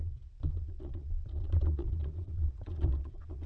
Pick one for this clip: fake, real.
fake